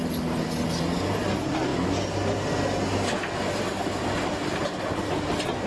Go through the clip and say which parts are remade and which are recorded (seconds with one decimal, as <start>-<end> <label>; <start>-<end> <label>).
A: 0.0-5.7 recorded